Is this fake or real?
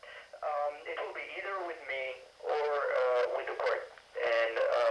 real